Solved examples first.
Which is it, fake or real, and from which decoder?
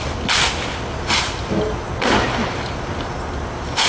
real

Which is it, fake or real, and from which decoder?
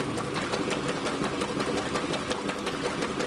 real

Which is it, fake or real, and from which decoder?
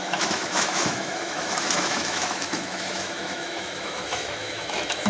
fake, autoencoder, DAC-VAE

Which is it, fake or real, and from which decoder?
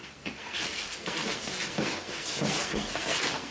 fake, codec, SNAC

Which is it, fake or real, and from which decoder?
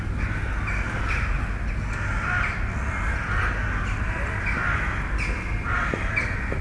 real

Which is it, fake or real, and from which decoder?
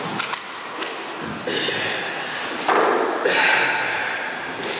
real